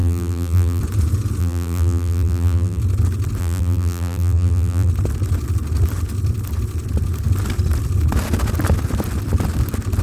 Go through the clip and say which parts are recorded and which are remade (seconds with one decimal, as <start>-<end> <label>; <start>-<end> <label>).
0.0-0.8 remade; 0.8-1.4 recorded; 1.4-2.8 remade; 2.8-3.4 recorded; 3.4-4.9 remade; 4.9-10.0 recorded